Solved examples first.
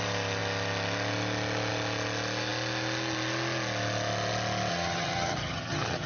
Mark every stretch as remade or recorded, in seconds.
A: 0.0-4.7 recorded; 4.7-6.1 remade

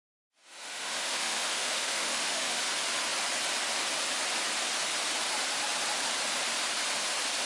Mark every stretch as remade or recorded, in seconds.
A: 0.0-0.4 recorded; 0.4-2.6 remade; 2.6-7.5 recorded

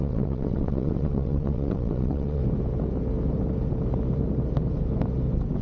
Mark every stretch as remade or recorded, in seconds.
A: 0.0-2.4 remade; 2.4-5.6 recorded

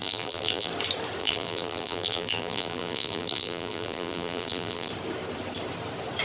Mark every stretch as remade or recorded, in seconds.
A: 0.0-0.7 remade; 0.7-1.2 recorded; 1.2-4.9 remade; 4.9-6.2 recorded